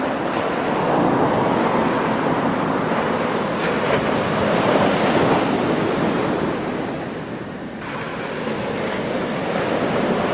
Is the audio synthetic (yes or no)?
no